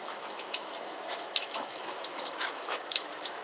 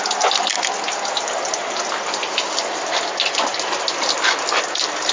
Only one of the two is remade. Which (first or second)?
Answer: first